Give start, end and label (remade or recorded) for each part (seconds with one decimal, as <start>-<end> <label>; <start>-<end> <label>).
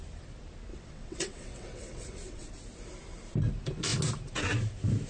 0.0-0.7 recorded; 0.7-2.5 remade; 2.5-5.1 recorded